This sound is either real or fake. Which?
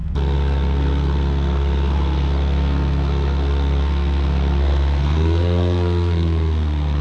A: fake